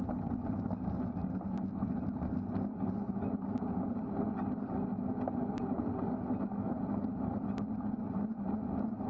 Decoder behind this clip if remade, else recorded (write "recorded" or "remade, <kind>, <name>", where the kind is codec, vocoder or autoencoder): recorded